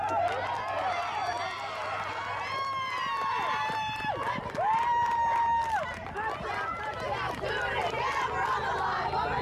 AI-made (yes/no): no